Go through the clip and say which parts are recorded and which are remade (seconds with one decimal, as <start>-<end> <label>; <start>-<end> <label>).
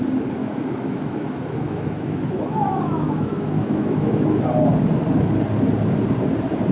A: 0.0-0.4 recorded; 0.4-4.4 remade; 4.4-6.7 recorded